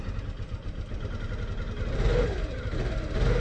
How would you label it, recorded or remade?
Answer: recorded